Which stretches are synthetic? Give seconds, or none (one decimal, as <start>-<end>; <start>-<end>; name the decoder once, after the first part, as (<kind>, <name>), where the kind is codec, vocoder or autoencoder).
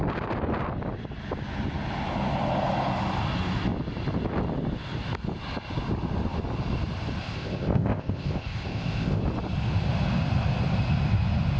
7.2-9.2 (codec, ZipCodec)